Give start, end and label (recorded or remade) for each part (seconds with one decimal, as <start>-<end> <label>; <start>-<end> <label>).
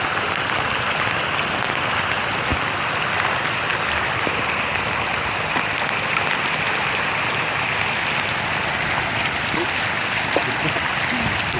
0.0-11.6 recorded